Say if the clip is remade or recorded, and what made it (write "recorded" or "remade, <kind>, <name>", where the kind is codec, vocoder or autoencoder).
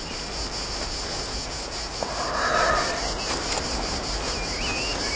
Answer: recorded